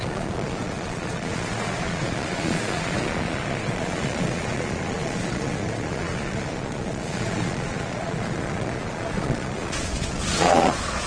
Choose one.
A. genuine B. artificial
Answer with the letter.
B